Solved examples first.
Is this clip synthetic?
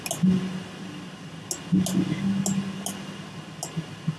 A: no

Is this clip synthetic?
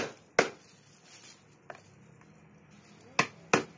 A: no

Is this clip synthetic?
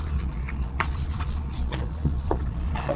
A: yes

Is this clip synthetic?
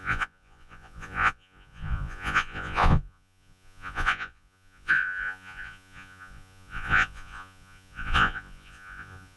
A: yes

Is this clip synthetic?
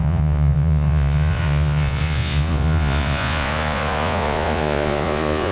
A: yes